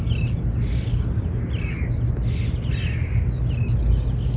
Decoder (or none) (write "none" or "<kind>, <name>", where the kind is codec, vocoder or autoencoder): none